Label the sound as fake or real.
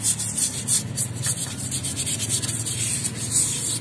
real